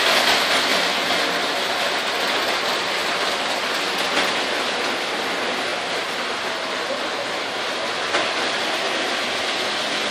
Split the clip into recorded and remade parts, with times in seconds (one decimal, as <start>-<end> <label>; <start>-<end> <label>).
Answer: 0.0-10.1 recorded